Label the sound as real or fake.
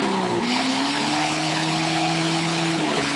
fake